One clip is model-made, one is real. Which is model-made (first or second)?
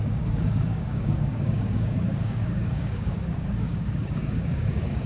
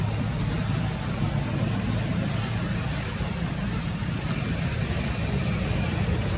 first